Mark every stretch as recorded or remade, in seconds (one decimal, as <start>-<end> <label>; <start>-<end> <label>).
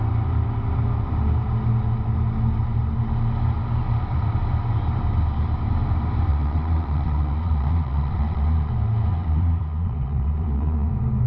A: 0.0-6.3 recorded; 6.3-8.7 remade; 8.7-9.1 recorded; 9.1-10.9 remade; 10.9-11.3 recorded